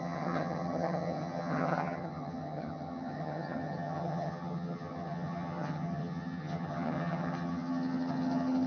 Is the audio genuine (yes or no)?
no